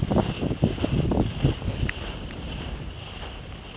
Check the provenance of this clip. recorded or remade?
recorded